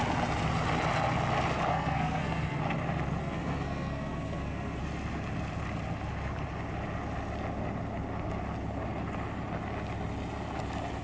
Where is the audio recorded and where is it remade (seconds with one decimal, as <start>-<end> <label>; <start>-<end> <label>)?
0.0-1.7 recorded; 1.7-2.6 remade; 2.6-3.2 recorded; 3.2-4.8 remade; 4.8-11.0 recorded